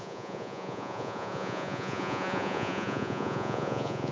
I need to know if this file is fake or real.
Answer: fake